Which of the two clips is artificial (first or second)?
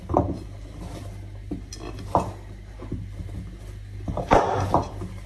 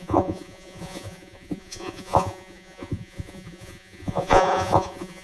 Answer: second